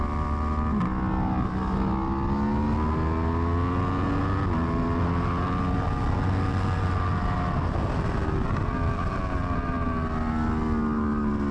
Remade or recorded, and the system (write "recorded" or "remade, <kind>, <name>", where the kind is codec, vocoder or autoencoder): recorded